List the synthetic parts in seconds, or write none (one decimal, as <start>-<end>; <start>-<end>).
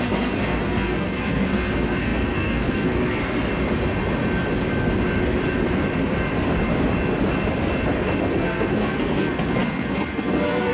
0.0-3.2; 8.2-10.7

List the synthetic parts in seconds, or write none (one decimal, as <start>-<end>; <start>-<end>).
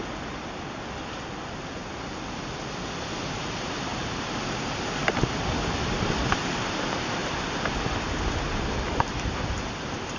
7.2-9.5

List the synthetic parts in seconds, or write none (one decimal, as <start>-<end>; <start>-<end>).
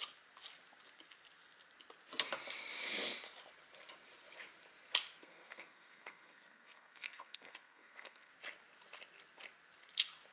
5.2-8.3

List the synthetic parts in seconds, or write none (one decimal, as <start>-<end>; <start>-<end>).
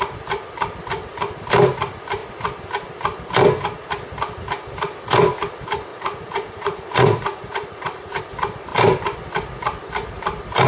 5.9-8.2